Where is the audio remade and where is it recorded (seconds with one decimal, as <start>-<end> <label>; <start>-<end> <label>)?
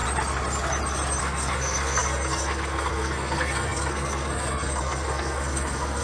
0.0-1.2 recorded; 1.2-6.0 remade